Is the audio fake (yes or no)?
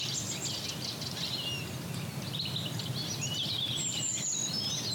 no